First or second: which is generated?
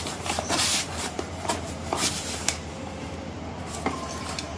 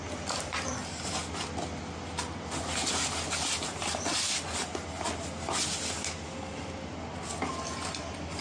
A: first